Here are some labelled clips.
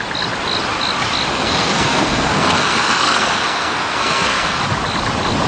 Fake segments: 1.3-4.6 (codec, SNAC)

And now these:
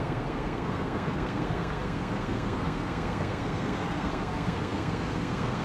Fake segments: 0.0-5.6 (codec, SNAC)

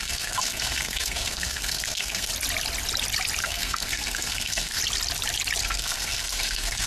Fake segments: 0.0-2.3 (codec, SNAC); 3.4-4.8; 5.6-6.9

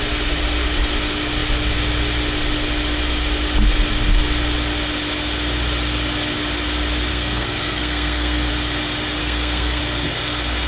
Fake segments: 7.1-8.5 (codec, SNAC); 9.2-9.8

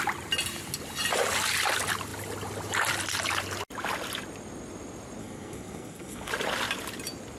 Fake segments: 5.2-6.3 (codec, SNAC)

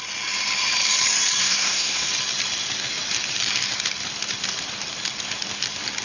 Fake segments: 1.4-2.1 (codec, SNAC)

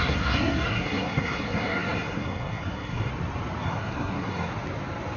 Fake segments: 0.0-3.1 (codec, SNAC); 3.6-4.5

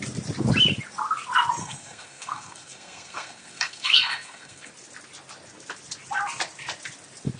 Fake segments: 1.6-4.7 (codec, SNAC)